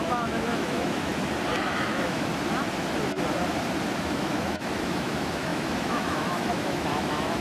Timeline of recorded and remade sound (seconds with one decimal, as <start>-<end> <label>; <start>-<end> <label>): 0.0-1.1 remade; 1.1-1.6 recorded; 1.6-2.3 remade; 2.3-4.0 recorded; 4.0-7.4 remade